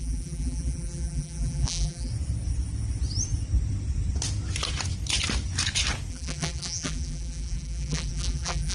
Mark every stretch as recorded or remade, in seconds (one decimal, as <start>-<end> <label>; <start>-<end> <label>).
0.0-2.1 remade; 2.1-6.1 recorded; 6.1-8.7 remade